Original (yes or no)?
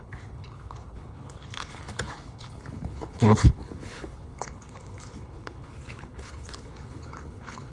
no